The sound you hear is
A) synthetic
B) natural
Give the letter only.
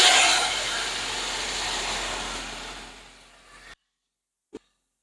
B